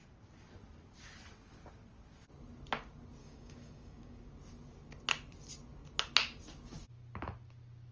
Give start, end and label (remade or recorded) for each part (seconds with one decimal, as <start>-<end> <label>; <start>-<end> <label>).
0.0-3.2 recorded; 3.2-4.3 remade; 4.3-7.9 recorded